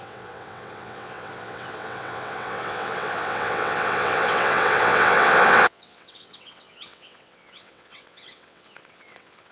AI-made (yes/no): yes